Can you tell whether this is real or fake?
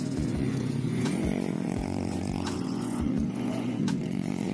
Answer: fake